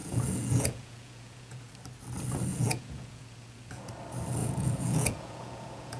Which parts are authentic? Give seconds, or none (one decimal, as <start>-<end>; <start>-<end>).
1.7-2.5; 3.9-4.4